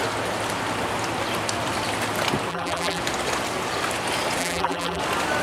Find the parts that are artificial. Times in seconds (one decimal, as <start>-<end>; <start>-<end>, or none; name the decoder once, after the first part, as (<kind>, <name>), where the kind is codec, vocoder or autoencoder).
2.5-3.0 (vocoder, BigVGAN v2); 4.4-5.0